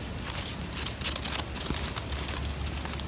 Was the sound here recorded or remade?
recorded